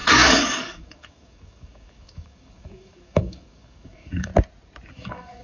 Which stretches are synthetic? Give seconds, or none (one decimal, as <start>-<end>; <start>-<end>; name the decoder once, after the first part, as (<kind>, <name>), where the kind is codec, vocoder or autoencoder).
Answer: 0.0-4.3 (codec, DAC); 4.9-5.4

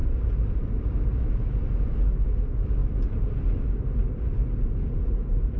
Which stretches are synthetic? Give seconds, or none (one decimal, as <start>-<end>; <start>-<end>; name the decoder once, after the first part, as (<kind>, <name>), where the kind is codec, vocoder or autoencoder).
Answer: 0.0-1.6 (vocoder, BigVGAN v2); 2.8-5.6

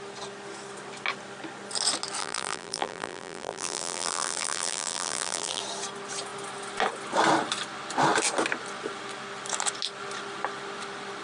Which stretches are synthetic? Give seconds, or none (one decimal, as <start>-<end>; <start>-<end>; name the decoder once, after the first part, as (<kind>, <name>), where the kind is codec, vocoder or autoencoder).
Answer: 2.2-5.6 (vocoder, BigVGAN v2)

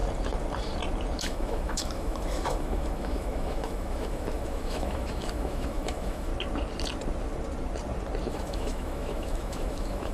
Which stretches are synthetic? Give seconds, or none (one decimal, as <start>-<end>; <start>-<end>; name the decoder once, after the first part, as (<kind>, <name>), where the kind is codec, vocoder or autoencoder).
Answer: 1.2-6.3 (autoencoder, DAC-VAE); 8.3-10.1

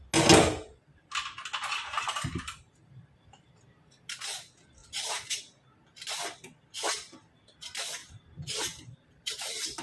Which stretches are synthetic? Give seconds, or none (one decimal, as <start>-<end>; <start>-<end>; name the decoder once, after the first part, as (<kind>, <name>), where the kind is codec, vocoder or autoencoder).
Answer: 4.8-5.4 (vocoder, BigVGAN v2); 8.0-9.8

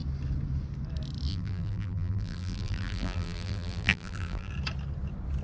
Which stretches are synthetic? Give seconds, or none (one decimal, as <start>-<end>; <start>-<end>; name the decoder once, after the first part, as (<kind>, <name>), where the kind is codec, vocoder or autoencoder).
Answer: 1.3-4.5 (vocoder, BigVGAN v2)